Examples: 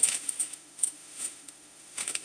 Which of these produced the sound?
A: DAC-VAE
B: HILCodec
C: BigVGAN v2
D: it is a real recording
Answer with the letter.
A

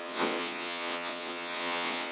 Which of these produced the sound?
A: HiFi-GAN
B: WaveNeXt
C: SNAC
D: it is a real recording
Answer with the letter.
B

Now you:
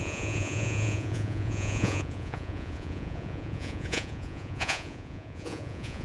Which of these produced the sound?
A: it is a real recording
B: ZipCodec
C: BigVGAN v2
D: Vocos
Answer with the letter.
D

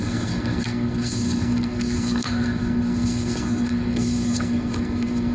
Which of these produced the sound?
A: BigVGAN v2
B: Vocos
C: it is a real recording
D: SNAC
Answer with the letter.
D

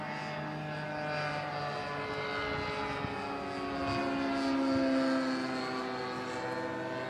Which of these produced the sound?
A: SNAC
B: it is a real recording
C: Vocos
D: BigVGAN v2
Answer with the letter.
B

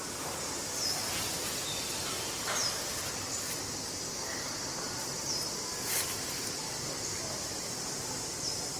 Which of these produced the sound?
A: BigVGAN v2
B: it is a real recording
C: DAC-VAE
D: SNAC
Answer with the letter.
B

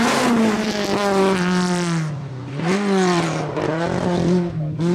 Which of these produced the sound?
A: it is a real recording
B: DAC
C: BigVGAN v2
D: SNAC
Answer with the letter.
C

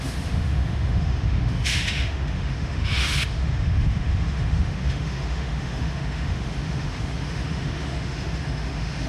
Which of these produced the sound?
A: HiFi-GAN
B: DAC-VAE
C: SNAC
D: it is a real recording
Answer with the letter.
B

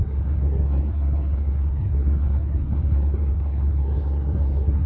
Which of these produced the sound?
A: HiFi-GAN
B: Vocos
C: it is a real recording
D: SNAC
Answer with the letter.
D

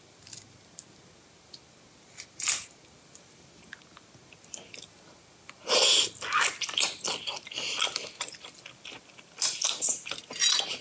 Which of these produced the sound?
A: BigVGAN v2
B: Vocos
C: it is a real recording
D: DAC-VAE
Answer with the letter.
C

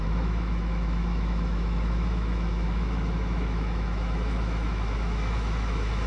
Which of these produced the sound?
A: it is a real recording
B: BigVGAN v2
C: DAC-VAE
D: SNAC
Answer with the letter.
C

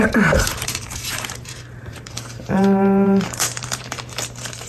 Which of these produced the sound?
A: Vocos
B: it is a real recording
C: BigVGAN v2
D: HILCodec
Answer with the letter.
C